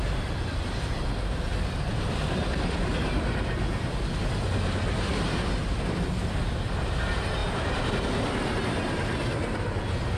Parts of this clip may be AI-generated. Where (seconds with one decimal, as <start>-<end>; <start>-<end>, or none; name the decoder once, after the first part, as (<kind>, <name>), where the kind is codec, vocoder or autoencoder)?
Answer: 1.5-3.9 (vocoder, BigVGAN v2); 5.6-6.7; 7.4-7.9